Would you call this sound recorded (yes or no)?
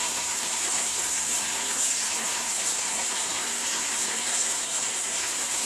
no